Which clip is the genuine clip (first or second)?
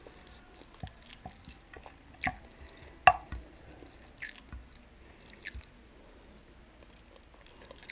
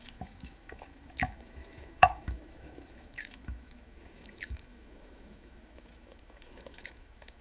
first